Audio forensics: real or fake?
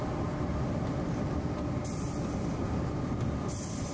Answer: real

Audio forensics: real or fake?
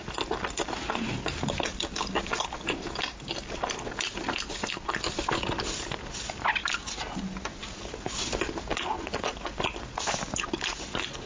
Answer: real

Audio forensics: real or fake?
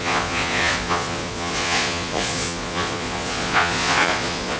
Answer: fake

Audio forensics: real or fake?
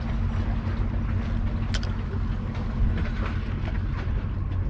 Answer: real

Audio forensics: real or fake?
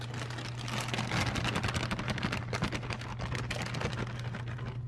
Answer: real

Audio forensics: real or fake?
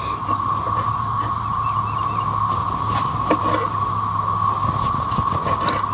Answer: real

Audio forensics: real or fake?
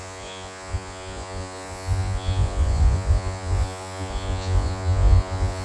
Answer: fake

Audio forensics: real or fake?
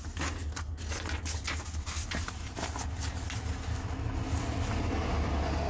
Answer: real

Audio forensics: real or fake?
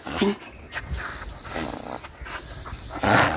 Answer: real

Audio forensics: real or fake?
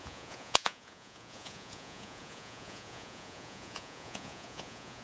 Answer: fake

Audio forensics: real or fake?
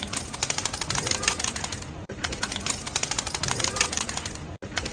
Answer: fake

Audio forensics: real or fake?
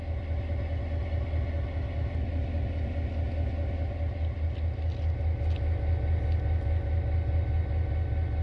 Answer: real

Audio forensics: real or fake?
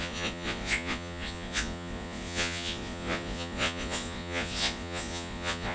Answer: fake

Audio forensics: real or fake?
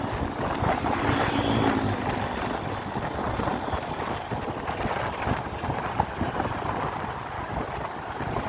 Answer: real